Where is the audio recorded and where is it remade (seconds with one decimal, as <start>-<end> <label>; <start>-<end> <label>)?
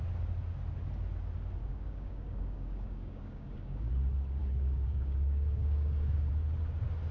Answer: 0.0-1.6 recorded; 1.6-3.9 remade; 3.9-4.4 recorded; 4.4-6.3 remade; 6.3-7.1 recorded